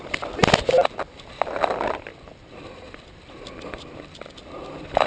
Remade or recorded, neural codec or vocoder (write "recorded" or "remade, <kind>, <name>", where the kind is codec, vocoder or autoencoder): recorded